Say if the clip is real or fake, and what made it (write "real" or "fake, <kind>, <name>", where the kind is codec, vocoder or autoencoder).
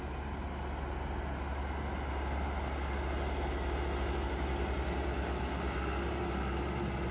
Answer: real